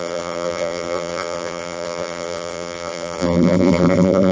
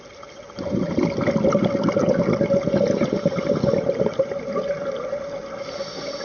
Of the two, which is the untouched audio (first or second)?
second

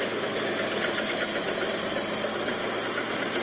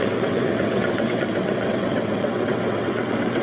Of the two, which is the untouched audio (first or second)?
first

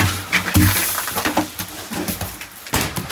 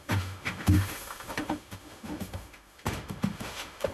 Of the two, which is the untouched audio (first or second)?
first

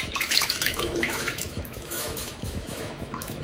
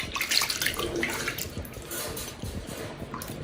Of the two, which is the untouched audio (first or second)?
second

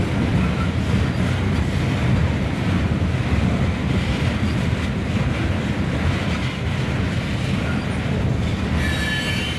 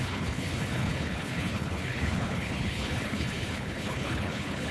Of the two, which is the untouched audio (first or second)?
first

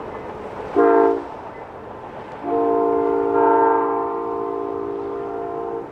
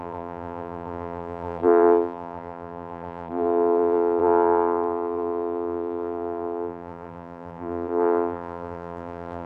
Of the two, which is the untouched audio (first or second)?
first